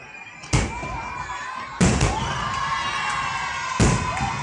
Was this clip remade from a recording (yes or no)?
no